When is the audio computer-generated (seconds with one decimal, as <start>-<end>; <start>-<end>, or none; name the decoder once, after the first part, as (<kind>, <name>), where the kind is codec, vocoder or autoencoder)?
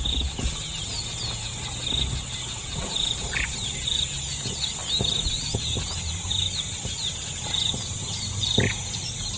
0.0-1.5 (vocoder, Vocos); 2.4-4.8; 5.3-9.4